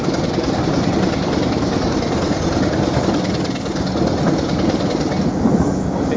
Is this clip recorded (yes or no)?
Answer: yes